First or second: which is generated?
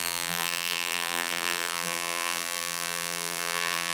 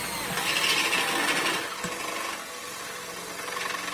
first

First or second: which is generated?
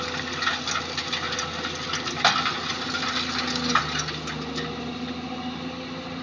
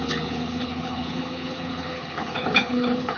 second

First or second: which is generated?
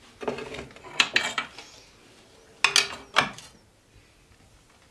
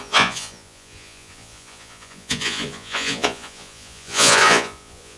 second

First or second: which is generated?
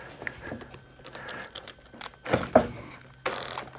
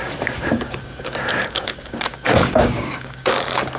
second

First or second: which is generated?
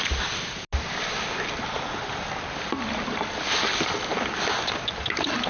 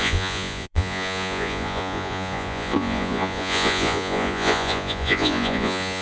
second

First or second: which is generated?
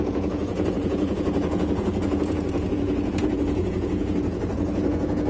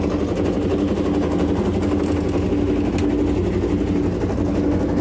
first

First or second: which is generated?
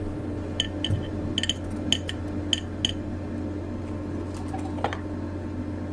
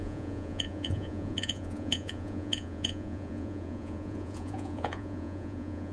second